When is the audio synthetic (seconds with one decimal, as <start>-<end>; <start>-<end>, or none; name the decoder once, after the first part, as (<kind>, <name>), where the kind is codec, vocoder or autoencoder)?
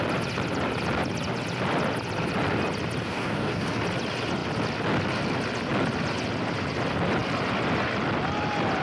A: 3.0-3.8 (codec, DAC)